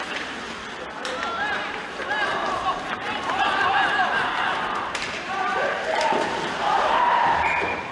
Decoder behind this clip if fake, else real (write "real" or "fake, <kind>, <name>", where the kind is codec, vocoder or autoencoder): fake, vocoder, BigVGAN v2